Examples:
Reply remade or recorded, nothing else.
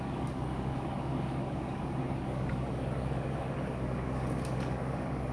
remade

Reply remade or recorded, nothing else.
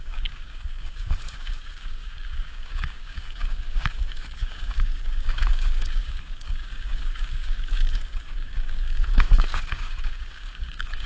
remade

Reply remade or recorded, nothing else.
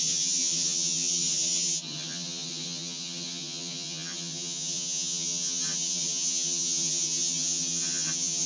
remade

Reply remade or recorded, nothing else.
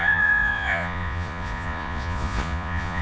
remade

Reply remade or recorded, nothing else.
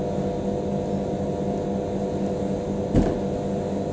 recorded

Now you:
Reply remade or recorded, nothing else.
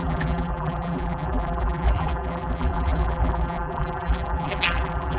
remade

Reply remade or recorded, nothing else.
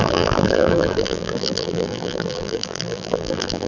remade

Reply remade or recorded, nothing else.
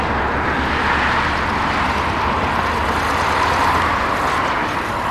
recorded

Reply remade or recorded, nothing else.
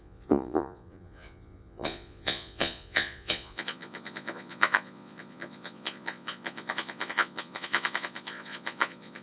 remade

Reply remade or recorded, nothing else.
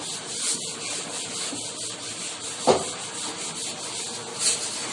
recorded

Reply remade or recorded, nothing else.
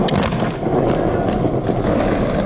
recorded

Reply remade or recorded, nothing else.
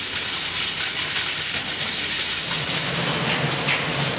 recorded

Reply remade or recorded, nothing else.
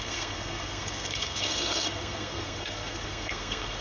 remade